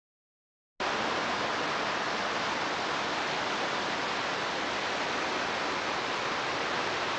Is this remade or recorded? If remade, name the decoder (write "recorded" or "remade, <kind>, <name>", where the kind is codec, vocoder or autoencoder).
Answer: recorded